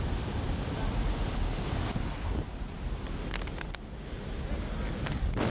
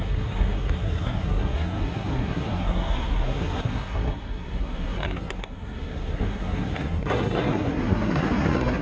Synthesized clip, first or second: second